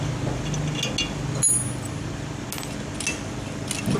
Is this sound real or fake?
real